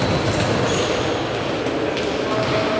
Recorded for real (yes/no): yes